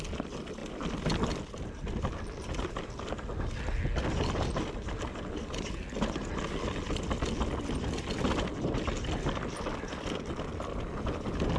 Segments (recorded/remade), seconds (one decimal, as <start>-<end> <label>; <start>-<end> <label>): 0.0-11.6 recorded

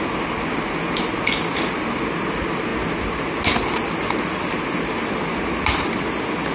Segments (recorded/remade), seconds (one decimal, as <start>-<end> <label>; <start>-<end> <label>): 0.0-6.5 recorded

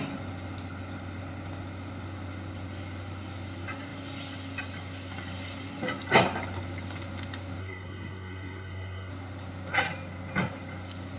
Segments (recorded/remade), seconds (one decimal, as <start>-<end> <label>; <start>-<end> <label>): 0.0-7.6 recorded; 7.6-9.1 remade; 9.1-11.2 recorded

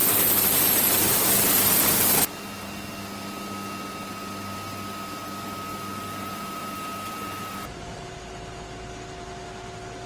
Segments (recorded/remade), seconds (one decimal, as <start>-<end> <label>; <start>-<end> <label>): 0.0-0.4 recorded; 0.4-1.3 remade; 1.3-5.7 recorded; 5.7-8.1 remade; 8.1-10.1 recorded